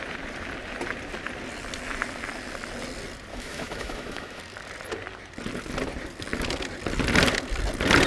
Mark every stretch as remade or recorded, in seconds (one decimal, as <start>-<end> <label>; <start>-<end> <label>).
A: 0.0-3.3 recorded; 3.3-4.4 remade; 4.4-8.1 recorded

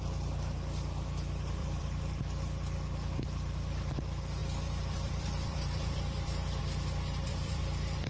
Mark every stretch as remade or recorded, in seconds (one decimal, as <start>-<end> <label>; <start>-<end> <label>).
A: 0.0-1.6 recorded; 1.6-2.2 remade; 2.2-4.4 recorded; 4.4-6.6 remade; 6.6-7.3 recorded; 7.3-8.1 remade

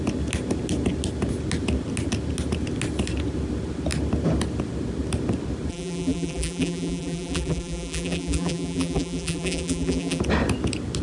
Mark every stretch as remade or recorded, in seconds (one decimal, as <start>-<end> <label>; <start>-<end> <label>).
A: 0.0-5.7 recorded; 5.7-10.2 remade; 10.2-11.0 recorded

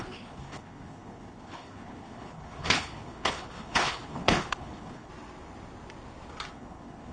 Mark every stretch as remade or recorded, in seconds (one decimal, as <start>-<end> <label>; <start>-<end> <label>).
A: 0.0-5.1 remade; 5.1-6.5 recorded; 6.5-7.1 remade

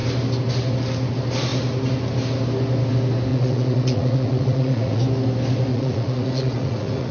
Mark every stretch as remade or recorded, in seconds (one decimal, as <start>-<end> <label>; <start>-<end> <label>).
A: 0.0-3.3 recorded; 3.3-5.0 remade; 5.0-5.7 recorded; 5.7-7.1 remade

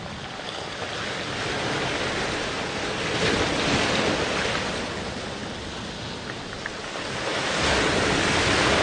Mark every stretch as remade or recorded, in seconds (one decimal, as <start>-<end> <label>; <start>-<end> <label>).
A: 0.0-8.8 recorded